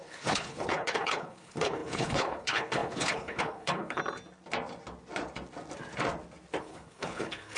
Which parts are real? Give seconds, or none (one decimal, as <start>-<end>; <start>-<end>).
4.0-6.6